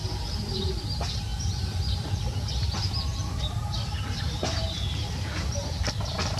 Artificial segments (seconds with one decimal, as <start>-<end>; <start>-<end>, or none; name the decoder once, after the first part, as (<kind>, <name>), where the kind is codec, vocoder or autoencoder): none